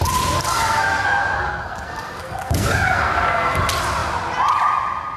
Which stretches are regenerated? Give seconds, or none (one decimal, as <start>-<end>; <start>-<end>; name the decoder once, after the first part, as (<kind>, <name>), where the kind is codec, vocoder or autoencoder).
0.5-3.6 (codec, SNAC)